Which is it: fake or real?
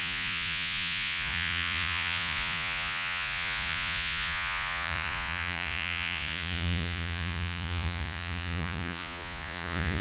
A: fake